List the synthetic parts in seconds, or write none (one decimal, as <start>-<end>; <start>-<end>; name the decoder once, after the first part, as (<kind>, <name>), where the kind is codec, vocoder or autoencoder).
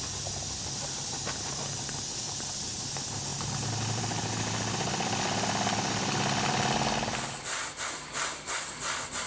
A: none